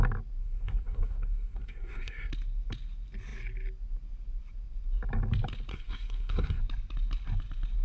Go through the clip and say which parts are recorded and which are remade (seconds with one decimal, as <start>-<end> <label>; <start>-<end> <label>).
0.0-0.4 recorded; 0.4-2.3 remade; 2.3-5.7 recorded; 5.7-6.6 remade; 6.6-7.8 recorded